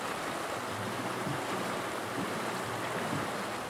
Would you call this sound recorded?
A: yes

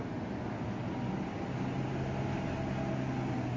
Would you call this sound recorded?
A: yes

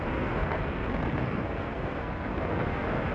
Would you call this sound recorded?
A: no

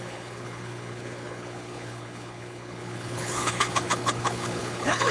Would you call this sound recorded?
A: no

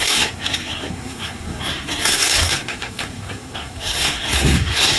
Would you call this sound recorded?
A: no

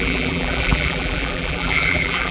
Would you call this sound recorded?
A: no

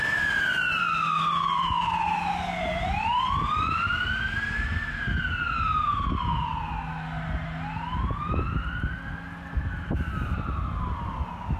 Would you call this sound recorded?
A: yes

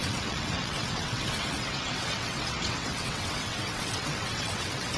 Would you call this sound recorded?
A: no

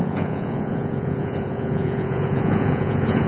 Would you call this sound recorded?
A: no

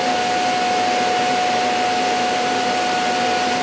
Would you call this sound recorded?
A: yes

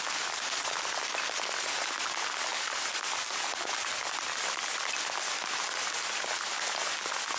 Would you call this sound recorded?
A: yes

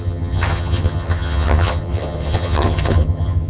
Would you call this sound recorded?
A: no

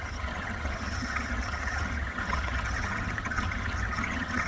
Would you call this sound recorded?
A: no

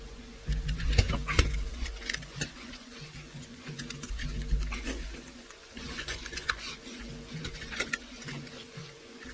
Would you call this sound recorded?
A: no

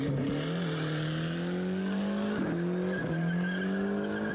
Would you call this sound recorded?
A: yes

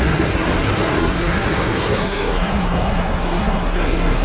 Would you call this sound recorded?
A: no